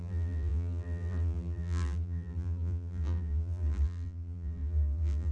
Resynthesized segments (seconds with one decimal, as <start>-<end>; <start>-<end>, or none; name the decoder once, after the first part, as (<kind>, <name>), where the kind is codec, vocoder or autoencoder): 0.0-5.3 (vocoder, BigVGAN v2)